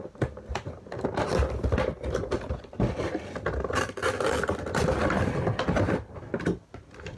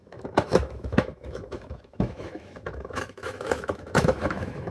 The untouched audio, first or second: first